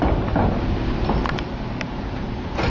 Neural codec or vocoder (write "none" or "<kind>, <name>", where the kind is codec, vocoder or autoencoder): none